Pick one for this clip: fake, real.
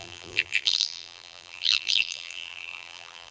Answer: fake